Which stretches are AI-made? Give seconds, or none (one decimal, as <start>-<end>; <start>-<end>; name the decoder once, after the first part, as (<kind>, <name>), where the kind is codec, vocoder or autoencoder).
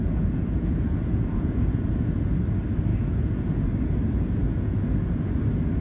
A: 0.0-2.3 (vocoder, Vocos); 2.9-3.8; 4.4-5.3